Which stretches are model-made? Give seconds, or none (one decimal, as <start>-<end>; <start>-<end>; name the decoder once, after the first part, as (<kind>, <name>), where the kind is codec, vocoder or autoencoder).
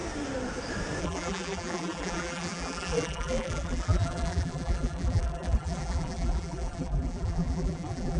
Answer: 1.0-8.2 (vocoder, BigVGAN v2)